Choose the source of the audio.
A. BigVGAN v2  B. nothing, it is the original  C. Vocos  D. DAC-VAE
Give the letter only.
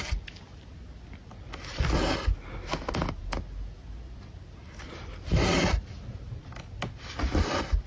B